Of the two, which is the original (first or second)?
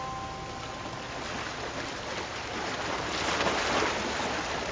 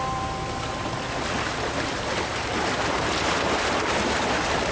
first